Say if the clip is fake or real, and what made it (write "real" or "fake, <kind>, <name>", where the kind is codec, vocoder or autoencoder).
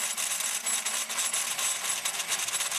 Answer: real